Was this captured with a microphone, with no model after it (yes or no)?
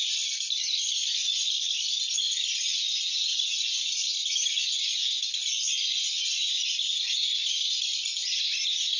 yes